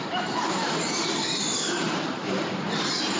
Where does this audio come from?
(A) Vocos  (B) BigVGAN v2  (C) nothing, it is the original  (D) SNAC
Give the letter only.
B